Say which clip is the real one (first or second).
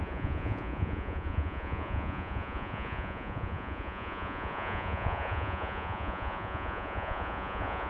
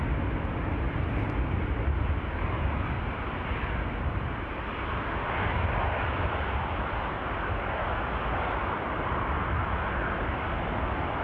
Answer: second